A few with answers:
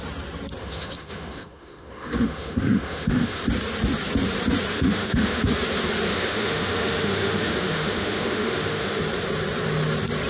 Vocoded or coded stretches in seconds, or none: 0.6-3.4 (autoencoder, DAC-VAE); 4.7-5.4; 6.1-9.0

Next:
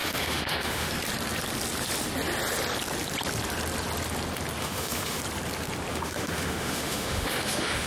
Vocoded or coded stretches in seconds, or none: 0.0-0.9 (autoencoder, DAC-VAE); 4.6-5.2; 5.9-7.9

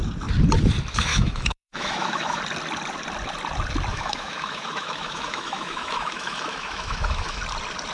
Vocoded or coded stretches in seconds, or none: 1.1-2.4 (autoencoder, DAC-VAE); 3.9-7.4

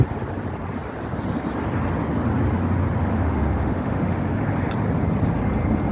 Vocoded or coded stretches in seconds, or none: 3.1-4.2 (autoencoder, DAC-VAE)

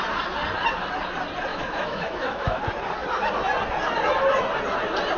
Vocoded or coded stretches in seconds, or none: 1.5-2.6 (autoencoder, DAC-VAE)

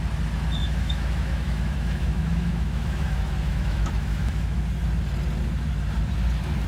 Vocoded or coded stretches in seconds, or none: 0.6-4.6 (autoencoder, DAC-VAE)